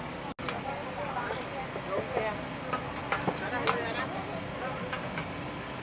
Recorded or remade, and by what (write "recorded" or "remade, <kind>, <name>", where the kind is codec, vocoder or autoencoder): recorded